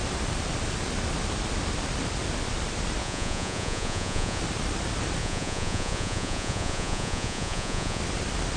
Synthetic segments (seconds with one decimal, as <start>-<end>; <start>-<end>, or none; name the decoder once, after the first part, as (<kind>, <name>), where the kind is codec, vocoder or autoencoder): 3.0-4.4 (vocoder, Vocos); 5.2-8.0